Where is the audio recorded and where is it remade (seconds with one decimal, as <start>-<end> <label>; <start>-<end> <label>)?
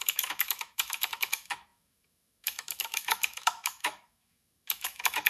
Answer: 0.0-5.3 remade